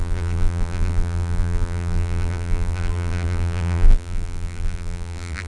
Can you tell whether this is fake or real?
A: fake